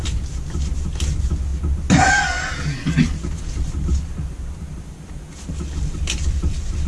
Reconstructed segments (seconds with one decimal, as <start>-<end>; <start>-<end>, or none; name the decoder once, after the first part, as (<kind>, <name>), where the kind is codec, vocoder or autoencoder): none